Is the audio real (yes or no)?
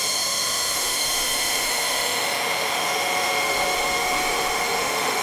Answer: no